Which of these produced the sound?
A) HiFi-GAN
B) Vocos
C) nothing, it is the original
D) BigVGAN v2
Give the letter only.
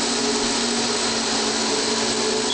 C